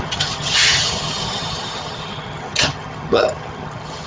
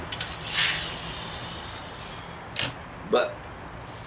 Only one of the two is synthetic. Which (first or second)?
first